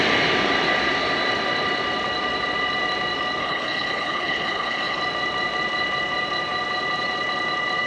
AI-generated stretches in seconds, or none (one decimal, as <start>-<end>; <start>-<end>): 3.4-5.0